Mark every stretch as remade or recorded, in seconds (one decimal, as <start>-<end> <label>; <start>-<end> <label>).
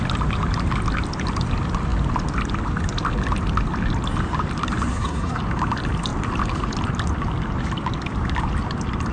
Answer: 0.0-4.9 recorded; 4.9-5.4 remade; 5.4-9.1 recorded